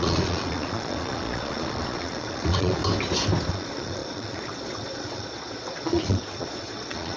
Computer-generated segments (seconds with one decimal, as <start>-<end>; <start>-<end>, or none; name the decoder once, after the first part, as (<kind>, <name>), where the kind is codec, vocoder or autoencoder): 0.0-2.8 (vocoder, Vocos); 3.5-7.2